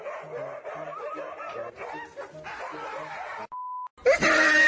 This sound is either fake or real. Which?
real